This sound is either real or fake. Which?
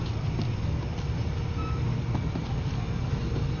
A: real